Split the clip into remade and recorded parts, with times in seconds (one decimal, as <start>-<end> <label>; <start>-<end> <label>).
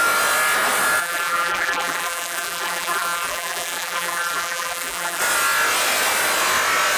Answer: 0.0-1.0 recorded; 1.0-5.2 remade; 5.2-7.0 recorded